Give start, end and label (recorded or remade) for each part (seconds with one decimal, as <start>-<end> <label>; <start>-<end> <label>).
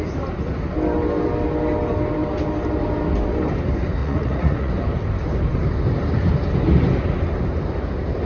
0.0-4.0 recorded; 4.0-4.7 remade; 4.7-8.3 recorded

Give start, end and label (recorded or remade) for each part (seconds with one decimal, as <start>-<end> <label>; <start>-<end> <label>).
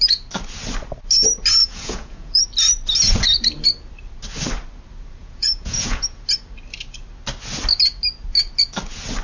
0.0-1.6 recorded; 1.6-2.4 remade; 2.4-5.2 recorded; 5.2-6.2 remade; 6.2-9.2 recorded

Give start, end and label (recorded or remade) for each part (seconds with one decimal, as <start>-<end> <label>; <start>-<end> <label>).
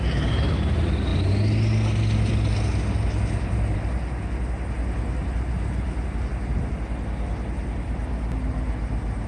0.0-9.3 recorded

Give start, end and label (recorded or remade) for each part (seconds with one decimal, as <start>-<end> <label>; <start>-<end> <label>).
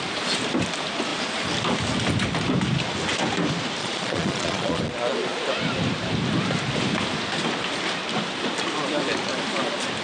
0.0-3.8 recorded; 3.8-4.8 remade; 4.8-10.0 recorded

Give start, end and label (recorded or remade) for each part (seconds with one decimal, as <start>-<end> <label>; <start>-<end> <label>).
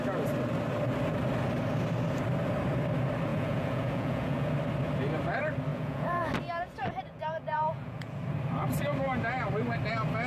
0.0-3.3 recorded; 3.3-4.5 remade; 4.5-5.7 recorded; 5.7-6.3 remade; 6.3-6.8 recorded; 6.8-8.2 remade; 8.2-10.3 recorded